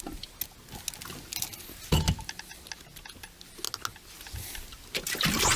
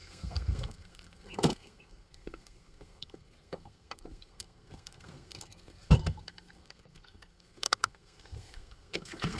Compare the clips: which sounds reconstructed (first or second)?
second